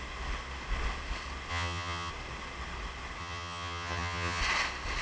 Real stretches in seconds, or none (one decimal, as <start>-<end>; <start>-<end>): 0.0-1.5; 2.1-3.2; 4.4-5.0